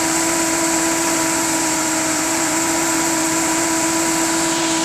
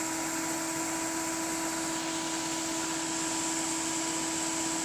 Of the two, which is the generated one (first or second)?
first